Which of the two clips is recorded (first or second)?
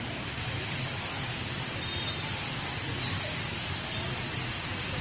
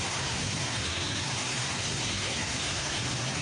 first